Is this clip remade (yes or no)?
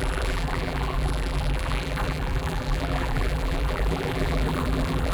yes